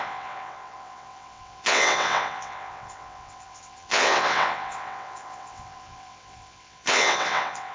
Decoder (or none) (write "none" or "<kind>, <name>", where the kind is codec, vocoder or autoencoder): vocoder, WaveNeXt